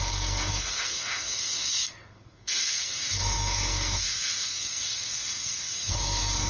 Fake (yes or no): yes